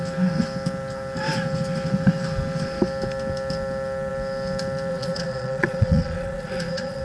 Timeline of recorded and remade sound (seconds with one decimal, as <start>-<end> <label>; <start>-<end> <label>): 0.0-4.9 recorded; 4.9-7.0 remade